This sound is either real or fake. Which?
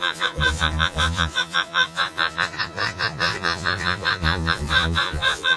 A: fake